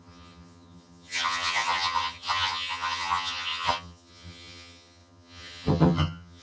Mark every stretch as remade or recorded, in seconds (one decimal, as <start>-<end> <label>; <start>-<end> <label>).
0.0-6.4 remade